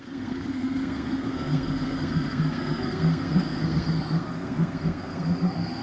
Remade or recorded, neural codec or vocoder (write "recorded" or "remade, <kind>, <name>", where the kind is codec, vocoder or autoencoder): remade, codec, SNAC